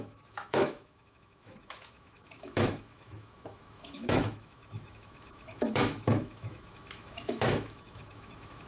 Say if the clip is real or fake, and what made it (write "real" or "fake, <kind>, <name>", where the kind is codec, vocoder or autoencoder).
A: fake, autoencoder, DAC-VAE